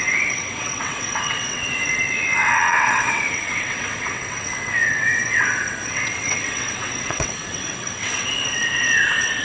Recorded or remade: remade